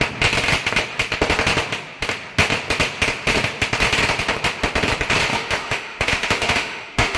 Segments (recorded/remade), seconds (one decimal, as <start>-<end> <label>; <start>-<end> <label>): 0.0-5.3 recorded; 5.3-7.2 remade